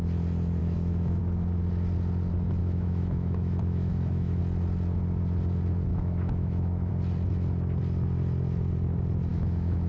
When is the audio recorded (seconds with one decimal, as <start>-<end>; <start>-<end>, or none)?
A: 0.0-0.6; 1.2-2.6; 4.4-5.9; 6.9-9.3